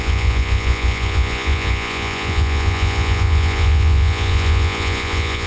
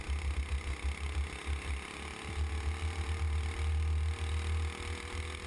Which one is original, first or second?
second